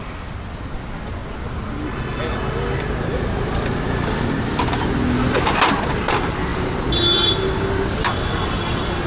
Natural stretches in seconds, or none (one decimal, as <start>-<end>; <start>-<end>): 0.0-9.1